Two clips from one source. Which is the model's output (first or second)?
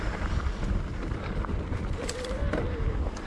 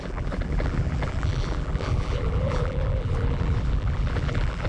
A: second